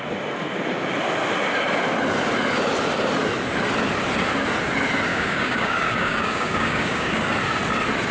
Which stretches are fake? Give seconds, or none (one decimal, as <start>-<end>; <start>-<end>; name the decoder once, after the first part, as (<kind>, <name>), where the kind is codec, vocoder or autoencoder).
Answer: 5.1-7.2 (codec, DAC)